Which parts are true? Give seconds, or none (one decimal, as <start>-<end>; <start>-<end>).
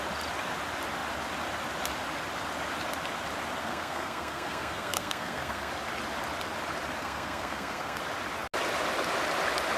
0.0-3.6; 5.7-7.0; 8.0-9.8